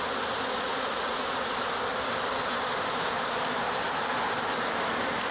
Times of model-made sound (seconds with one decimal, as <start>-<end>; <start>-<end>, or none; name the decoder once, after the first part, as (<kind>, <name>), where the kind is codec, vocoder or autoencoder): 0.7-1.5 (vocoder, Vocos)